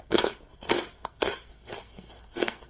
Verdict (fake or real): fake